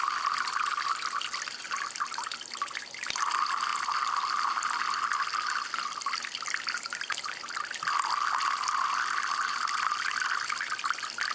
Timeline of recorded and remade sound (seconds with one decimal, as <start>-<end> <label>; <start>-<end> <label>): 0.0-11.3 recorded